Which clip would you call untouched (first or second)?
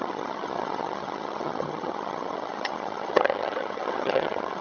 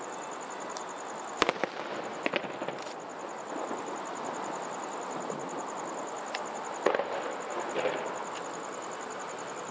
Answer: second